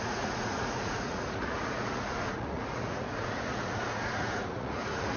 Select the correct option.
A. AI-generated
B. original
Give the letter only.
A